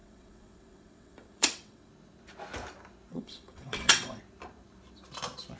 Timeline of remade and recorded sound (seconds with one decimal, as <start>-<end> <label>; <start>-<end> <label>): 0.0-1.9 remade; 1.9-3.1 recorded; 3.1-4.2 remade; 4.2-5.6 recorded